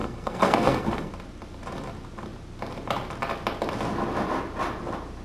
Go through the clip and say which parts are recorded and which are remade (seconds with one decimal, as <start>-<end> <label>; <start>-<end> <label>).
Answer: 0.0-1.1 remade; 1.1-5.2 recorded